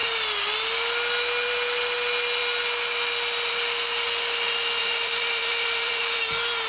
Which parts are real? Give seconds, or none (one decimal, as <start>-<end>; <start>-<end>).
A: 0.0-4.8; 6.2-6.7